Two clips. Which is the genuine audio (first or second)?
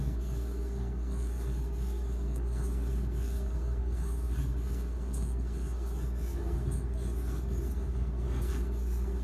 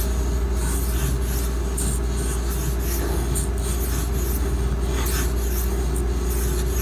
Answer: second